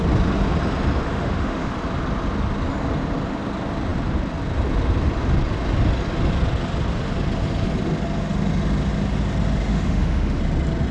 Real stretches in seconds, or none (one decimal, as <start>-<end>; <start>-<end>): 0.0-1.1; 1.7-9.7; 10.4-10.9